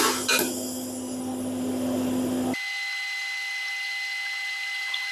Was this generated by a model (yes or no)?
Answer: no